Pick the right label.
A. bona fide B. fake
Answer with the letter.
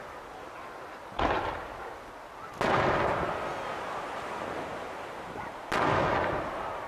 A